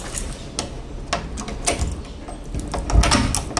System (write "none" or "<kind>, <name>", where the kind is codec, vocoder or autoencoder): none